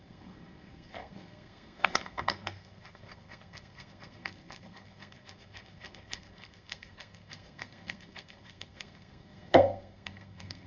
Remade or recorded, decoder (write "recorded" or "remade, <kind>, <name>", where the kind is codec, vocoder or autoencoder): remade, codec, SNAC